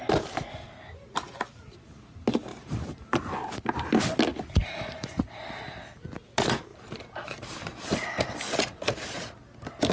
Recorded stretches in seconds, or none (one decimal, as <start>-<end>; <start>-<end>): 0.0-2.5; 3.3-4.3; 5.2-6.7; 8.4-9.9